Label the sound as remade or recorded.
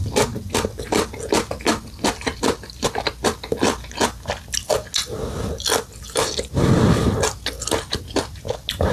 recorded